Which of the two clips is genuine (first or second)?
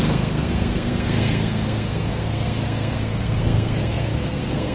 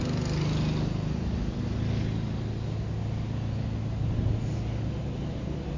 second